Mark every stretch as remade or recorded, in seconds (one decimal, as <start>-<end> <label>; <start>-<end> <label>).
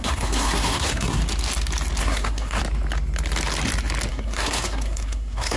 0.0-1.2 remade; 1.2-2.0 recorded; 2.0-2.6 remade; 2.6-4.1 recorded; 4.1-5.6 remade